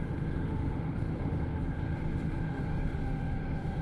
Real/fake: fake